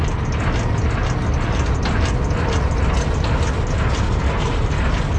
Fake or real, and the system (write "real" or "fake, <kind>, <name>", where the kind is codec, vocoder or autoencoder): real